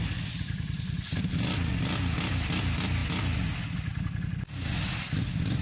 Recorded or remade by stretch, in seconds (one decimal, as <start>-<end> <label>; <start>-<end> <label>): 0.0-5.6 recorded